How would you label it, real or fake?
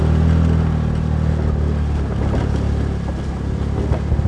real